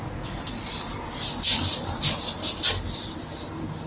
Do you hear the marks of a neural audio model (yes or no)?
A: no